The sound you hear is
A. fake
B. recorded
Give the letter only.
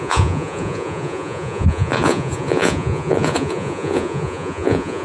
A